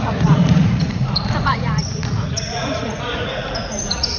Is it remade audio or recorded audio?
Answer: remade